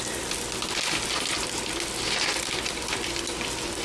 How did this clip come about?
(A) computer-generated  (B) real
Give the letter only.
B